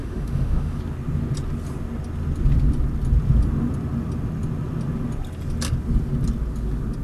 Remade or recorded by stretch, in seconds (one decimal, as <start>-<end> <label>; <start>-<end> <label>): 0.0-0.8 remade; 0.8-7.0 recorded